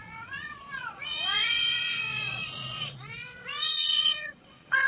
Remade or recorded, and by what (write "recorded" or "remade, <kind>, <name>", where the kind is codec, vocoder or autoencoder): remade, vocoder, Vocos